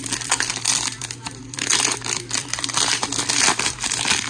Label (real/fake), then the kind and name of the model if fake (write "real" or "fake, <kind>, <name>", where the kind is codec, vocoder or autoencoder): fake, vocoder, BigVGAN v2